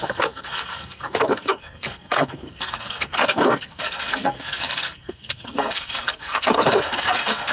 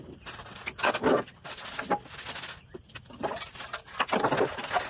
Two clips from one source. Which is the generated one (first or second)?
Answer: first